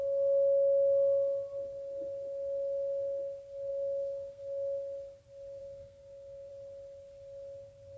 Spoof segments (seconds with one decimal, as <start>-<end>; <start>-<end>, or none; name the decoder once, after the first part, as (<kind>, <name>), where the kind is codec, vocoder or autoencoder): 3.7-4.4 (codec, SNAC); 5.6-6.5